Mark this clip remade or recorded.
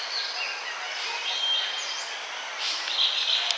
recorded